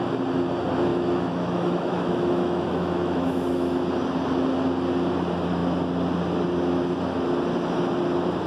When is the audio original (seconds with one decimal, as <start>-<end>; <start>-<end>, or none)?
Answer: 0.0-0.9; 3.8-8.5